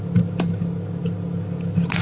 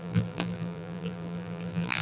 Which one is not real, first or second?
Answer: second